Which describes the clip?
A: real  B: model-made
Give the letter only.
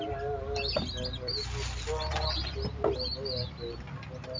A